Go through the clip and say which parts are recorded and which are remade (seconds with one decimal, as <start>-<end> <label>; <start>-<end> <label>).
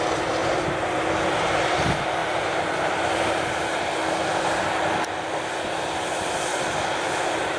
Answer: 0.0-0.4 recorded; 0.4-1.1 remade; 1.1-2.2 recorded; 2.2-3.9 remade; 3.9-6.5 recorded; 6.5-7.6 remade